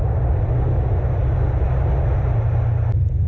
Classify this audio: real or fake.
real